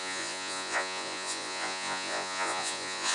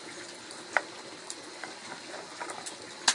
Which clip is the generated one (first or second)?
first